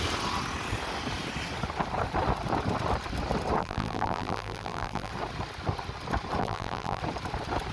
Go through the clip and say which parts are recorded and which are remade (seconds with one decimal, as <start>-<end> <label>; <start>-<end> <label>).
0.0-3.6 recorded; 3.6-5.1 remade; 5.1-6.4 recorded; 6.4-7.0 remade; 7.0-7.7 recorded